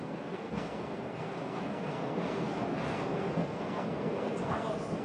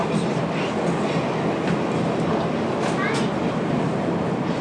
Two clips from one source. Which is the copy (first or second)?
first